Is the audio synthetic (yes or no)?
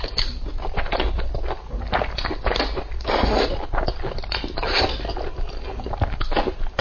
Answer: no